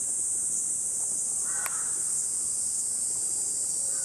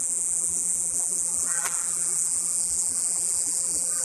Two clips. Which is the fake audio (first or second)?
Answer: second